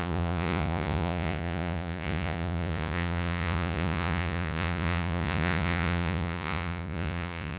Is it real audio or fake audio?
fake